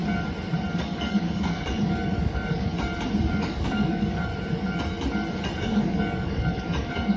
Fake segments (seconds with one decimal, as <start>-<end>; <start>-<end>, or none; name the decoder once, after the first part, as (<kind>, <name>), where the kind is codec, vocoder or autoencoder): 0.7-2.7 (codec, DAC); 3.3-4.3; 5.6-7.2